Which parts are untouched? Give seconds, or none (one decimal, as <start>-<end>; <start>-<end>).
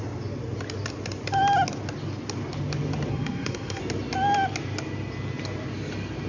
0.0-3.1; 3.8-6.3